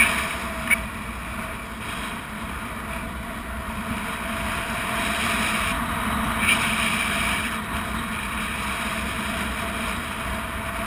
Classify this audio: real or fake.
real